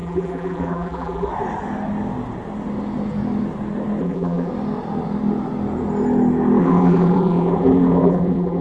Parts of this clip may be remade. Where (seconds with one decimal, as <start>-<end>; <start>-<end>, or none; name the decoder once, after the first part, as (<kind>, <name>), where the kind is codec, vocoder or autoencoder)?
0.0-1.3 (vocoder, BigVGAN v2); 4.0-4.5; 6.6-8.6